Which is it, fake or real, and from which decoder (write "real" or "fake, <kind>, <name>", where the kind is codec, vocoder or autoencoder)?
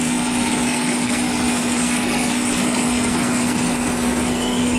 fake, codec, SNAC